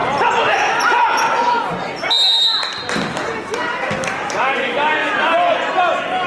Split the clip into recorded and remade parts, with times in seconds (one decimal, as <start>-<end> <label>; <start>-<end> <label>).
0.0-6.3 recorded